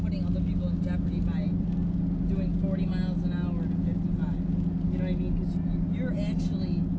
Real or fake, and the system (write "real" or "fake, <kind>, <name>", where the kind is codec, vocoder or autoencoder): real